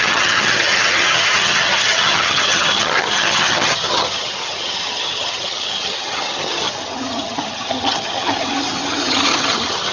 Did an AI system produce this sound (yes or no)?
yes